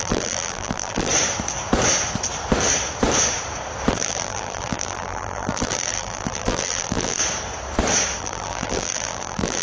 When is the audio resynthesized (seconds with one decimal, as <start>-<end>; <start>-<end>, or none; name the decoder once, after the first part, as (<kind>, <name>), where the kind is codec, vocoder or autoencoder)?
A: 0.0-1.1 (vocoder, BigVGAN v2); 3.9-7.2; 8.2-9.6